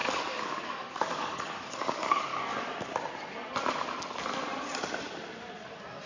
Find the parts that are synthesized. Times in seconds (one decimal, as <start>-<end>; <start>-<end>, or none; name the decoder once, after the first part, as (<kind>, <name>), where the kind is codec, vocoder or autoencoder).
0.0-2.3 (codec, DAC)